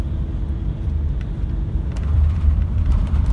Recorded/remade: remade